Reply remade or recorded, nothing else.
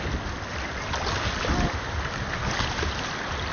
recorded